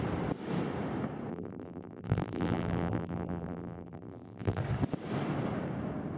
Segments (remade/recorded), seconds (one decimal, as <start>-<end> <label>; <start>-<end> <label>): 0.0-1.3 recorded; 1.3-4.6 remade; 4.6-6.2 recorded

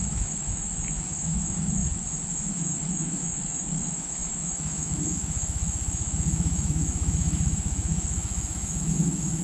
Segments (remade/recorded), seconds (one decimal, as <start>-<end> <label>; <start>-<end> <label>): 0.0-1.8 remade; 1.8-2.3 recorded; 2.3-9.4 remade

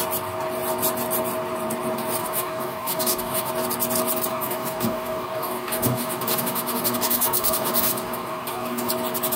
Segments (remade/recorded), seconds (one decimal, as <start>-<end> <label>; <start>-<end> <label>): 0.0-2.2 recorded; 2.2-3.5 remade; 3.5-4.3 recorded; 4.3-8.9 remade; 8.9-9.4 recorded

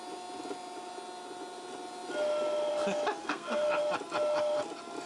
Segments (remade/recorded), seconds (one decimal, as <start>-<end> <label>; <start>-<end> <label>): 0.0-3.2 recorded; 3.2-3.8 remade; 3.8-5.1 recorded

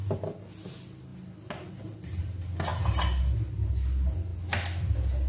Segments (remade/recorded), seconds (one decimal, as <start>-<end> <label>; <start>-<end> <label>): 0.0-5.3 recorded

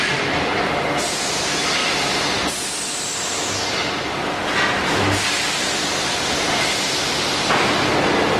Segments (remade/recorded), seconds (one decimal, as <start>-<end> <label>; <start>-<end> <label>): 0.0-8.4 recorded

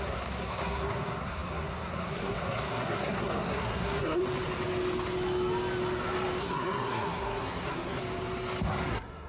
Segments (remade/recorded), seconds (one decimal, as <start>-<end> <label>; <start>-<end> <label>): 0.0-4.2 remade; 4.2-6.4 recorded; 6.4-8.0 remade; 8.0-8.9 recorded; 8.9-9.3 remade